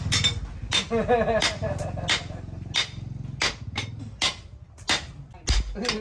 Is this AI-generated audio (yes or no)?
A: no